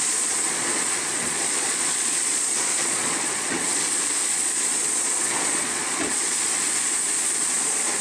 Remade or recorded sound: remade